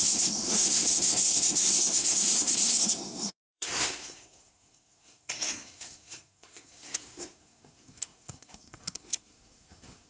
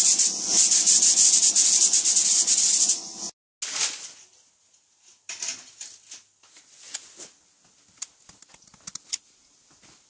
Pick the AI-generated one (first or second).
first